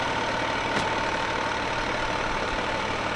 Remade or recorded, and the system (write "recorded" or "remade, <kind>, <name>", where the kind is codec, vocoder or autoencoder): remade, vocoder, BigVGAN v2